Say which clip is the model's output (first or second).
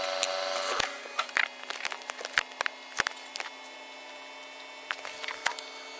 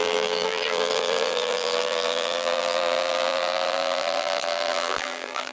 second